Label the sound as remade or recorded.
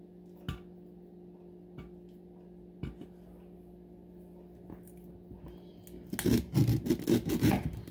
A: recorded